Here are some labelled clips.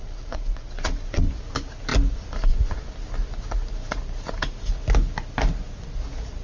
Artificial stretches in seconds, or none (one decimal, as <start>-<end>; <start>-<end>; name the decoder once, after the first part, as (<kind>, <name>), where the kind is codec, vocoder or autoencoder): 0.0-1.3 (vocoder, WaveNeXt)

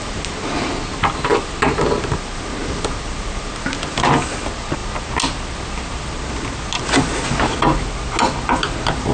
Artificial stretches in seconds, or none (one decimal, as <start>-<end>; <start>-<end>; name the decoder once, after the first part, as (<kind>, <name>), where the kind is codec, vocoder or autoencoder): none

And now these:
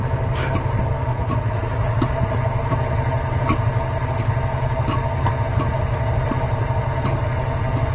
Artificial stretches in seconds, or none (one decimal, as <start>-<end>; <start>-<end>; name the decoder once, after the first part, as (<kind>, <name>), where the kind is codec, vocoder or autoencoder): 1.1-2.0 (vocoder, Vocos)

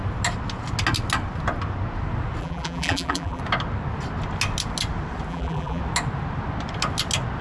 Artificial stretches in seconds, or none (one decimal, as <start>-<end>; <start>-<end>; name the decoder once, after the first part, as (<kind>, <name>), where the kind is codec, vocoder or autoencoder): 2.4-3.4 (vocoder, BigVGAN v2); 5.3-5.8

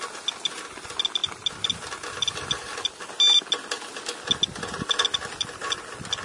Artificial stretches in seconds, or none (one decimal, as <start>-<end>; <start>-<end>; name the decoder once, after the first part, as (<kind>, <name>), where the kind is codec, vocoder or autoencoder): none